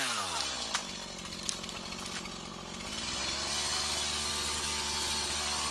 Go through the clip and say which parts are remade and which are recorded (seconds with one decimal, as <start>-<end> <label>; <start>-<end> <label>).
0.0-5.7 recorded